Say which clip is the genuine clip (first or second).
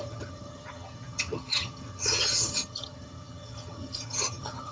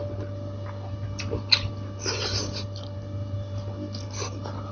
second